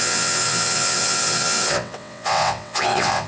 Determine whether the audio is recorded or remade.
remade